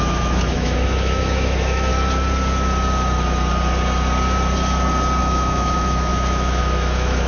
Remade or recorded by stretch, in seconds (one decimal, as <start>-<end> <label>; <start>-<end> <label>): 0.0-1.9 remade; 1.9-5.2 recorded; 5.2-7.3 remade